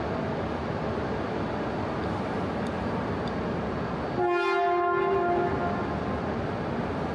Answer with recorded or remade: recorded